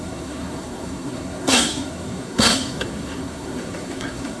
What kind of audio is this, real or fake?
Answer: fake